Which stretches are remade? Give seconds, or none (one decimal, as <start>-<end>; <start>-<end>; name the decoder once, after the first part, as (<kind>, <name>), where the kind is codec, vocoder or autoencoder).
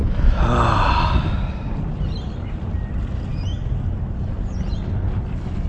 none